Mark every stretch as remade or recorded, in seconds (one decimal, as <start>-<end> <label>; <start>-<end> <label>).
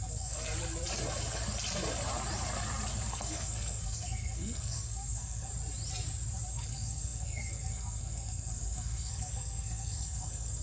0.0-0.5 remade; 0.5-3.1 recorded; 3.1-5.5 remade; 5.5-6.5 recorded; 6.5-10.6 remade